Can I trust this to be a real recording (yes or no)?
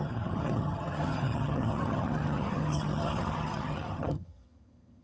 no